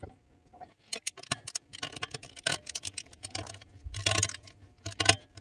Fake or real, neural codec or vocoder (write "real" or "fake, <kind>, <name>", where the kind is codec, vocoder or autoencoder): real